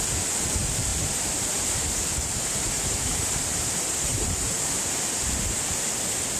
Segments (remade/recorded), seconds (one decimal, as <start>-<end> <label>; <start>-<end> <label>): 0.0-0.9 recorded; 0.9-4.7 remade; 4.7-6.4 recorded